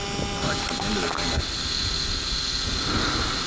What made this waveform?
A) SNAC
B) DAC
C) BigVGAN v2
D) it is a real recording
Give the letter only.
D